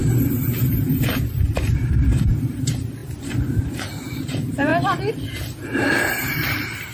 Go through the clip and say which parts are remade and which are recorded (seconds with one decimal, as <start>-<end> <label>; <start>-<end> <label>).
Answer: 0.0-4.7 remade; 4.7-6.0 recorded; 6.0-6.9 remade